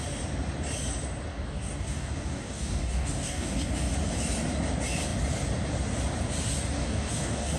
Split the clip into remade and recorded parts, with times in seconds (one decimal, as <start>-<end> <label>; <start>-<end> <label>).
0.0-1.3 recorded; 1.3-3.7 remade; 3.7-6.8 recorded; 6.8-7.6 remade